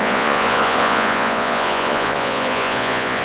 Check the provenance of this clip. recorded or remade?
remade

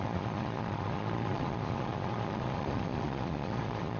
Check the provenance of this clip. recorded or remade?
remade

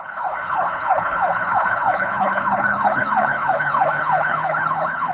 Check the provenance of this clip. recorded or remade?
remade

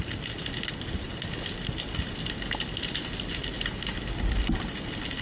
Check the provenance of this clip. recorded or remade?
recorded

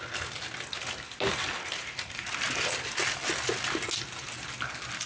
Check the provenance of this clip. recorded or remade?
recorded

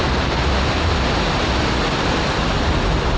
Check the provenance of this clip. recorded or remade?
recorded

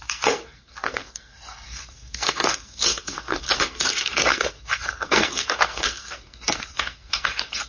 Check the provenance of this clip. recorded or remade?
remade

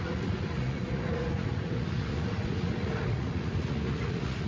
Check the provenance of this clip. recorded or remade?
remade